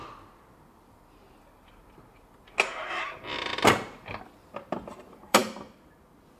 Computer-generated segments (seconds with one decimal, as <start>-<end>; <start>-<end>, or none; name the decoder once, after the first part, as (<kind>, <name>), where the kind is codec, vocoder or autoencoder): 2.9-5.4 (vocoder, BigVGAN v2)